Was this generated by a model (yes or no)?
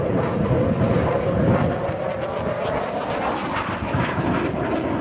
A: no